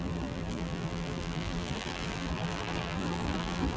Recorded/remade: remade